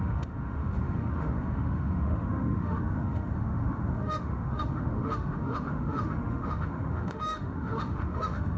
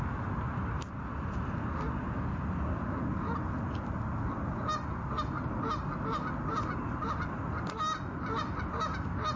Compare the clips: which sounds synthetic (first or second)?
first